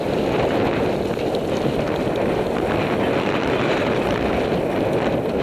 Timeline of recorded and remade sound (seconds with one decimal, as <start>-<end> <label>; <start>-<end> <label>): 0.0-3.7 recorded; 3.7-4.5 remade; 4.5-5.4 recorded